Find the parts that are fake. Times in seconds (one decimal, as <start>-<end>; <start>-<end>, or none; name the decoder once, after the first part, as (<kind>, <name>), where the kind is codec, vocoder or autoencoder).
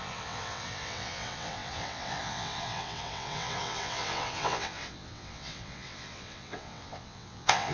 0.0-7.7 (vocoder, WaveNeXt)